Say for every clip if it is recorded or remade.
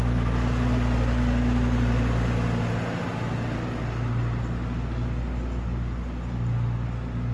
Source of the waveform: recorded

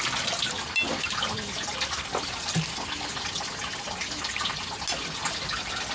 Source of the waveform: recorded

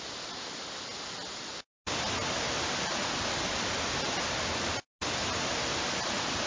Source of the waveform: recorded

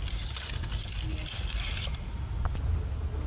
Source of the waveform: recorded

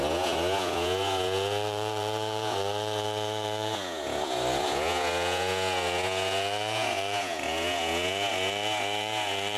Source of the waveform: remade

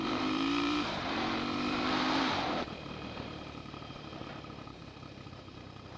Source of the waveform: remade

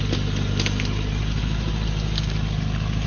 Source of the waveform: recorded